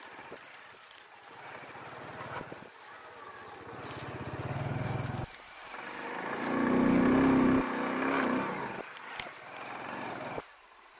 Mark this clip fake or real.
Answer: real